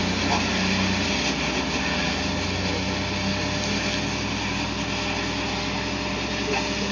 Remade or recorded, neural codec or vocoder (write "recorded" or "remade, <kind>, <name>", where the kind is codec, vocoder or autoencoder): recorded